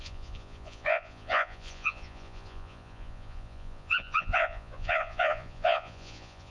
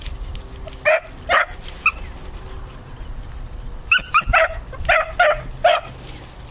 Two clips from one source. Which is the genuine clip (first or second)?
second